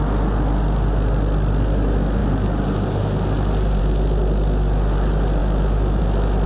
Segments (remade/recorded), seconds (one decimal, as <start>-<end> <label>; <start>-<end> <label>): 0.0-5.4 recorded; 5.4-6.0 remade; 6.0-6.5 recorded